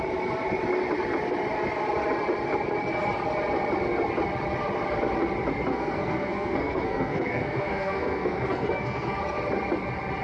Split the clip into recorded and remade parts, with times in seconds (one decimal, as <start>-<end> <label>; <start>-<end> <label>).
0.0-5.7 recorded; 5.7-9.2 remade; 9.2-10.2 recorded